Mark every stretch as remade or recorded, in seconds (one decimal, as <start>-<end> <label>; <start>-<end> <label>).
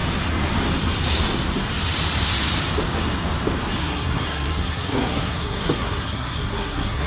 0.0-3.8 recorded; 3.8-7.1 remade